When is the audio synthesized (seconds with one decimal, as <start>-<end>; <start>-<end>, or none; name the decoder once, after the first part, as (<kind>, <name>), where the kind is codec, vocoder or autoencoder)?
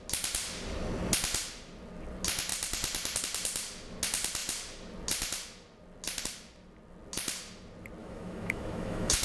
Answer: 8.0-9.2 (autoencoder, DAC-VAE)